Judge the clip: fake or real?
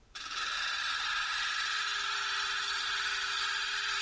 real